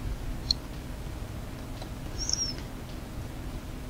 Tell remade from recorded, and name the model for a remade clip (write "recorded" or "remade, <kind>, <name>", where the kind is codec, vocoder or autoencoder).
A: recorded